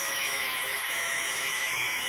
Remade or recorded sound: remade